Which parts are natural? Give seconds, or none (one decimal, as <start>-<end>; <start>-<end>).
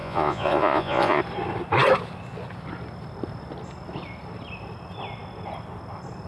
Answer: 1.2-6.3